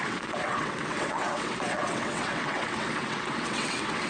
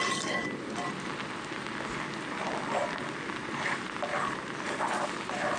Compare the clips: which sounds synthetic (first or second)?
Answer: first